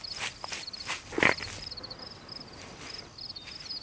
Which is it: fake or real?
real